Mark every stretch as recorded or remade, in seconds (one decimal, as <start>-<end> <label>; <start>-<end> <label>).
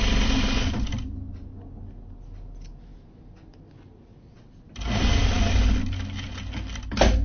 0.0-7.2 recorded